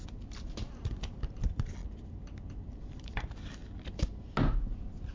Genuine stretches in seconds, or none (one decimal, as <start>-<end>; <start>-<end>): 0.0-5.1

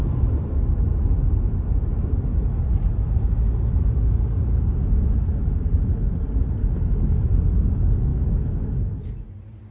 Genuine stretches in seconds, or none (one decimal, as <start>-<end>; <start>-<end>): 0.0-6.6; 7.4-8.1; 9.0-9.7

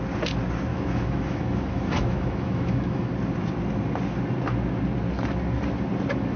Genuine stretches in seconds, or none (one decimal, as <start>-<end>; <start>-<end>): 0.0-0.7; 3.1-6.4

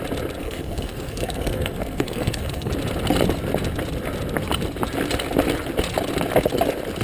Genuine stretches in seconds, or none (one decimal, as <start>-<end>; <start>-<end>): 0.0-0.4; 2.7-7.0

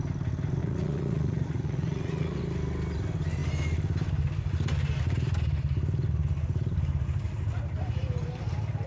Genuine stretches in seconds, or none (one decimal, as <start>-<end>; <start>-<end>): 0.0-0.6; 2.4-8.9

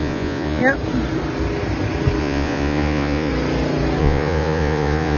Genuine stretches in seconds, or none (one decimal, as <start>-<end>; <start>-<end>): 0.6-2.2; 3.3-4.0